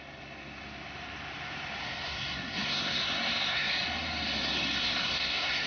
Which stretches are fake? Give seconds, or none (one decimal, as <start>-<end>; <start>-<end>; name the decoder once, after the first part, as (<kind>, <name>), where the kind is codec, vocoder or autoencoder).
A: 1.8-3.7 (codec, SNAC); 4.8-5.7